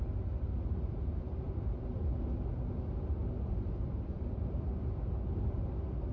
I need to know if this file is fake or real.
real